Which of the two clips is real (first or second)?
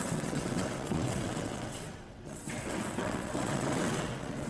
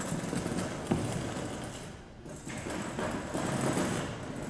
second